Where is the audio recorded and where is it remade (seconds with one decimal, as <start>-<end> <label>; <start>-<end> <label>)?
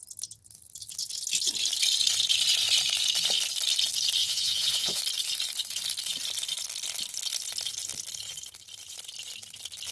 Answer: 0.0-4.2 recorded; 4.2-5.0 remade; 5.0-9.9 recorded